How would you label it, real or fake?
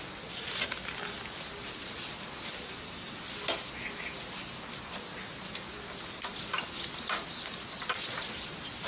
real